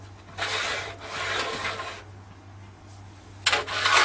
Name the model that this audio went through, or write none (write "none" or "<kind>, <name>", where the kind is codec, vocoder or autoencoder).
none